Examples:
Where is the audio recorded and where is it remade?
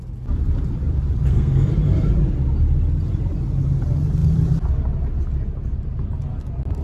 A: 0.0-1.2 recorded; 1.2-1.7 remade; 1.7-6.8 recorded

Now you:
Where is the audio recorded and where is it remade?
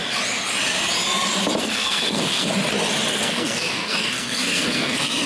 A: 0.0-1.6 recorded; 1.6-2.5 remade; 2.5-3.1 recorded; 3.1-5.3 remade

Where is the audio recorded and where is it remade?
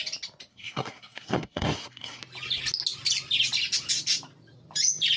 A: 0.0-0.5 recorded; 0.5-2.2 remade; 2.2-5.2 recorded